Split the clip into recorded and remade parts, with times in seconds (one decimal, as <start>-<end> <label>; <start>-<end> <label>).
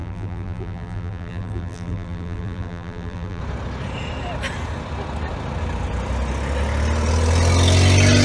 0.0-3.4 remade; 3.4-8.2 recorded